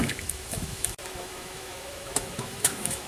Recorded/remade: remade